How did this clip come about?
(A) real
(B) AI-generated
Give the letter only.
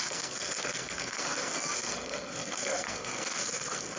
B